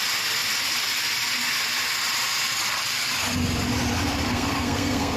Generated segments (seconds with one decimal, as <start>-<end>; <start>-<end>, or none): 4.3-5.2